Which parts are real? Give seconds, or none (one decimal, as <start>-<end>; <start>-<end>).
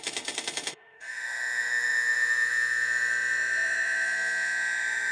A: none